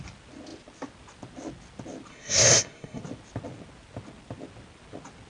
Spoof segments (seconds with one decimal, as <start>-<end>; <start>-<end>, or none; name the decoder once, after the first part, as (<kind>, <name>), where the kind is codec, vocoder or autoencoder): 2.1-3.0 (codec, SNAC)